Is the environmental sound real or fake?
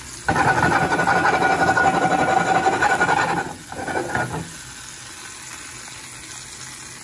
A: real